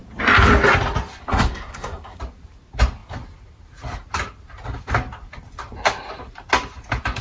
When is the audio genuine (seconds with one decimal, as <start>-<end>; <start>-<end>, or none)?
0.0-1.2; 2.2-7.2